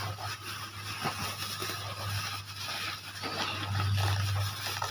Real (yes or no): yes